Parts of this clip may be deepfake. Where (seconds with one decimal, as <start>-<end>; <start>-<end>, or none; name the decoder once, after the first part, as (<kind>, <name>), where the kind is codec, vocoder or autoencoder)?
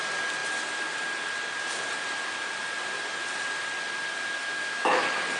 4.4-5.0 (autoencoder, DAC-VAE)